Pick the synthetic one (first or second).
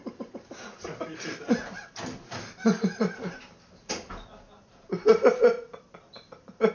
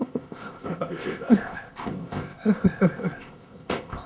second